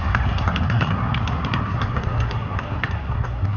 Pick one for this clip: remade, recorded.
remade